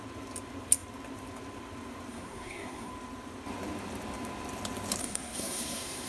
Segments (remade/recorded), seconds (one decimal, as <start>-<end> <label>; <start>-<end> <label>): 0.0-2.1 recorded; 2.1-2.9 remade; 2.9-5.0 recorded; 5.0-6.1 remade